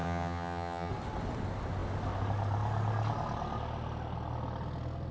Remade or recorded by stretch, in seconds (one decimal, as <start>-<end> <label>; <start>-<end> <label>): 0.0-0.9 remade; 0.9-5.1 recorded